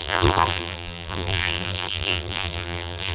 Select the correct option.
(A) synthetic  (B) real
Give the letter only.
A